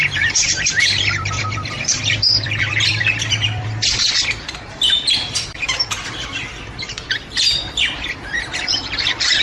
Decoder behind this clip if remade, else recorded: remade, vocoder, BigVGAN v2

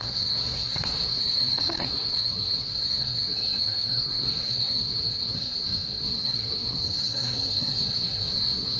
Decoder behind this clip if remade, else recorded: remade, codec, SNAC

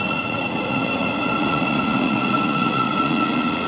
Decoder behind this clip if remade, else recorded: remade, vocoder, Vocos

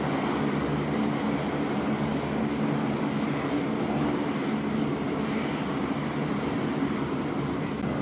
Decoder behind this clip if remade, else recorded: recorded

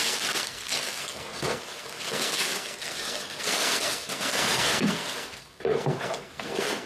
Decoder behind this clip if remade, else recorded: remade, codec, SNAC